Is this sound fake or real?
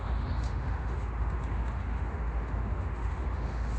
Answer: fake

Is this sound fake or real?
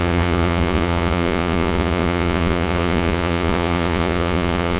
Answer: fake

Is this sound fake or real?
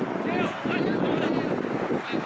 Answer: real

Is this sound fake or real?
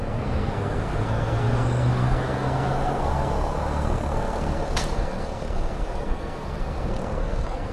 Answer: fake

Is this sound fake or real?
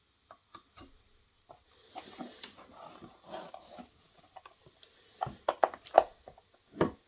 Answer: real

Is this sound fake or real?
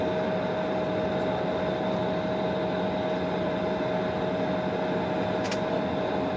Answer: real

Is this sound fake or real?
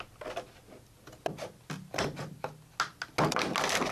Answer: real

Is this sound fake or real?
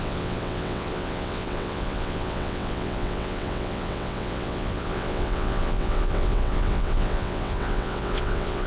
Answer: fake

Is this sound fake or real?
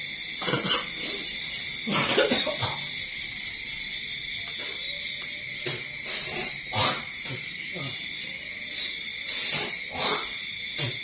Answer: real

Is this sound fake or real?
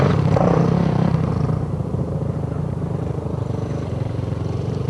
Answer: fake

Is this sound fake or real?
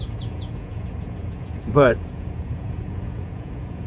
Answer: fake